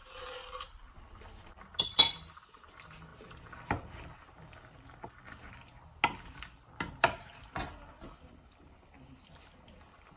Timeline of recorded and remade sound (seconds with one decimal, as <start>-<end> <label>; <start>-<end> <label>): 0.0-10.2 recorded